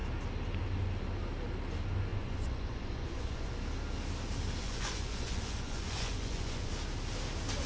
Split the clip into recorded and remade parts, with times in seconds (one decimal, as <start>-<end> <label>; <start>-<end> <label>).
0.0-2.1 recorded; 2.1-3.5 remade; 3.5-4.6 recorded; 4.6-6.7 remade; 6.7-7.7 recorded